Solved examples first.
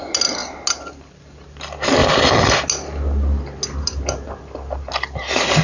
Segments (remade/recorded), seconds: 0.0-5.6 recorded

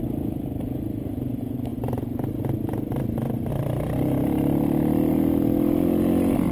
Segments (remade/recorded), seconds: 0.0-6.5 recorded